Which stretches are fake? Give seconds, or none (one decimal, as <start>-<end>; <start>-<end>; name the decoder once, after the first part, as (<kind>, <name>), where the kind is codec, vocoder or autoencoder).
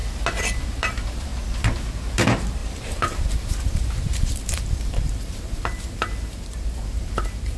0.6-1.3 (vocoder, BigVGAN v2); 1.8-7.6